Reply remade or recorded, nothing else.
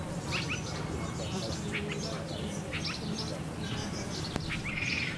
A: recorded